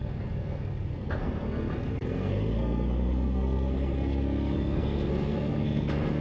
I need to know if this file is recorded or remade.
remade